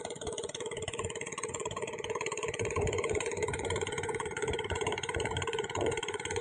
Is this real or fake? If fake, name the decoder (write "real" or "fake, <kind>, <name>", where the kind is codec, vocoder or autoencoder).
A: fake, vocoder, Vocos